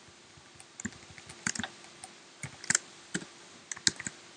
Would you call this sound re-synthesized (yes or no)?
no